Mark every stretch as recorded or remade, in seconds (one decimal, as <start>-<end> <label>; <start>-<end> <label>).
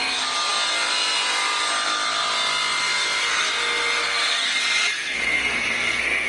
0.0-4.0 recorded; 4.0-6.3 remade